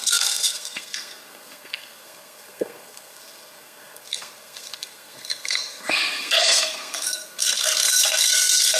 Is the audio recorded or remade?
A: remade